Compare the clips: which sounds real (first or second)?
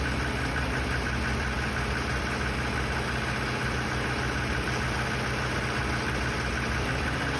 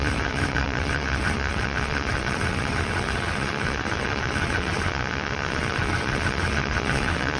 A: first